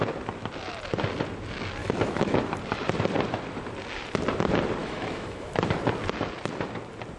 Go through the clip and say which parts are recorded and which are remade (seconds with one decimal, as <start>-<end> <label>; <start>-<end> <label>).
0.0-1.8 recorded; 1.8-2.4 remade; 2.4-4.8 recorded; 4.8-5.5 remade; 5.5-7.2 recorded